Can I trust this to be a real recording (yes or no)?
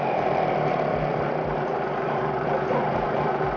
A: no